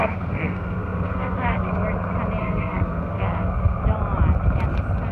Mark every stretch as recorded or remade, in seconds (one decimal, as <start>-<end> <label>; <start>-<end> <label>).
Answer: 0.0-1.7 remade; 1.7-2.4 recorded; 2.4-3.8 remade; 3.8-5.1 recorded

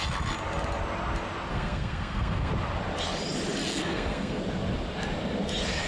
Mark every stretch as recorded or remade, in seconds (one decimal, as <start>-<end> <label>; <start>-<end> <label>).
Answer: 0.0-1.5 recorded; 1.5-2.5 remade; 2.5-3.7 recorded; 3.7-4.4 remade; 4.4-5.9 recorded